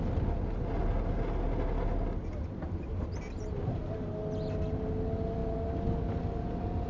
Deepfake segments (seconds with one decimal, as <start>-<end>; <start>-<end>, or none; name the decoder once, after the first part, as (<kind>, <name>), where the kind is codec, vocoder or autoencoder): none